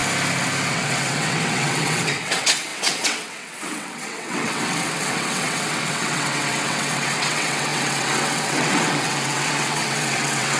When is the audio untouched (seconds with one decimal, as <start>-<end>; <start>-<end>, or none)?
0.0-0.7